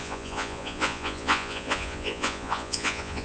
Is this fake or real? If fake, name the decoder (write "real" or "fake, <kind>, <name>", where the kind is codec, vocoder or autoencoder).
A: fake, vocoder, Vocos